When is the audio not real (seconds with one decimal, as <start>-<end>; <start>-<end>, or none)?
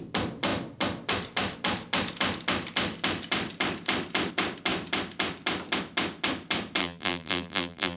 6.8-8.0